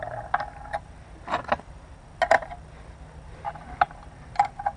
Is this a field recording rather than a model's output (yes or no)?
yes